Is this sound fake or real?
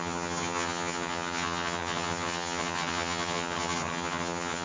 fake